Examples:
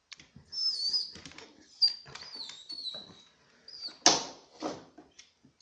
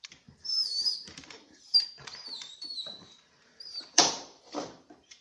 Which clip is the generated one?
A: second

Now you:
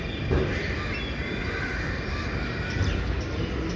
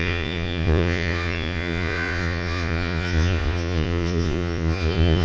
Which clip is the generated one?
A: second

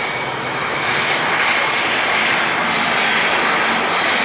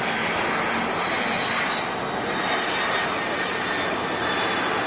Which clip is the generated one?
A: first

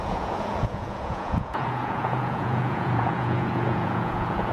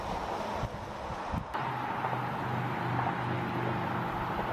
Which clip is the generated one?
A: first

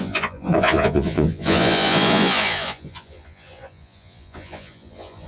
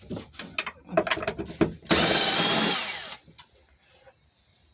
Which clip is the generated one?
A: first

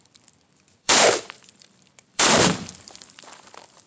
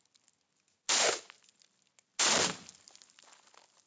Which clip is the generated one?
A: first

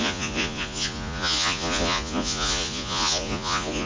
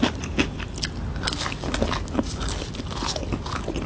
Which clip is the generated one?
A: first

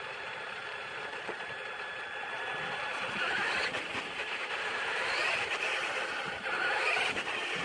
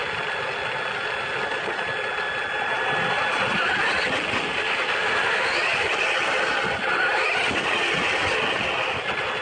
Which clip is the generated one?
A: first